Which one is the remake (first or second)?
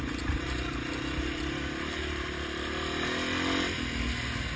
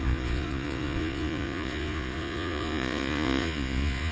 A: second